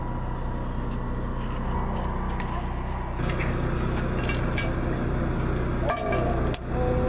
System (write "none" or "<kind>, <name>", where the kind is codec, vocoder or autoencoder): none